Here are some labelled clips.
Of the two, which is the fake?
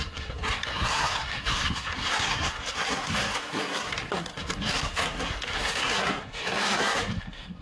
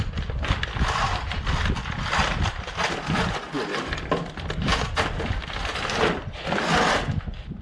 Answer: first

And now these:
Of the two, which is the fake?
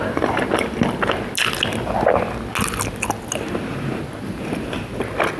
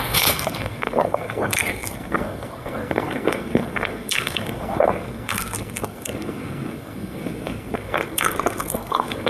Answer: second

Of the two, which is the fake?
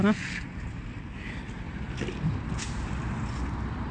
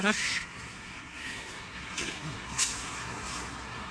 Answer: second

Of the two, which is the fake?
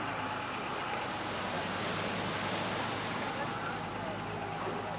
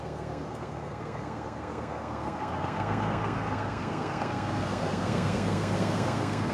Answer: second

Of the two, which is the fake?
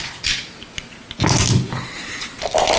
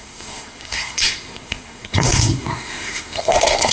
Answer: second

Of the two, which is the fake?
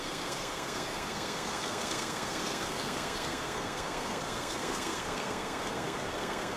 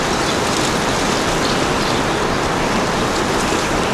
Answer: first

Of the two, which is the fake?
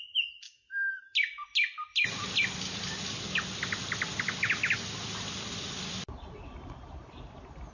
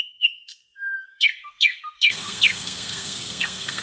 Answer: second